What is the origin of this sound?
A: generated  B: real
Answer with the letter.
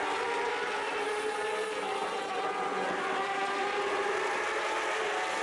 B